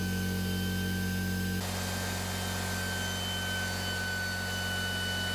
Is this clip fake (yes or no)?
no